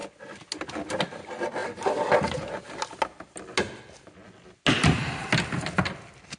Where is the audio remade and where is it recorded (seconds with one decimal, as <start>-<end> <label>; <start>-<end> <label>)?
0.0-6.4 recorded